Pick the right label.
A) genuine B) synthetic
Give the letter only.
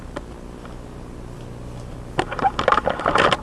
A